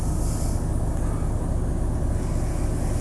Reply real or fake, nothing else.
real